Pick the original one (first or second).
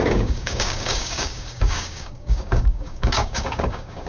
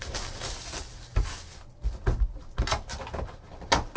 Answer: second